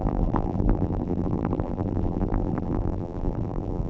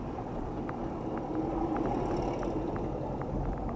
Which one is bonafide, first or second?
second